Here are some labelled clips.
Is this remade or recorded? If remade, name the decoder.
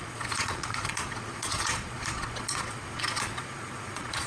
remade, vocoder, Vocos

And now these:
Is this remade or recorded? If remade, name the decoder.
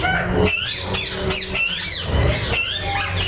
recorded